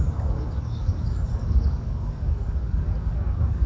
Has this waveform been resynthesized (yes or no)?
yes